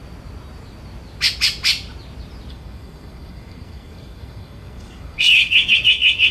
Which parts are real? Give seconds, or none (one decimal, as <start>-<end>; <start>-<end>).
0.0-2.5